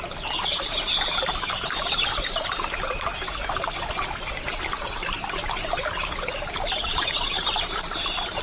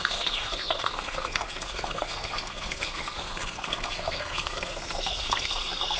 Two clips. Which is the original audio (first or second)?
first